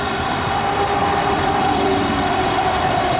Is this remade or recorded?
remade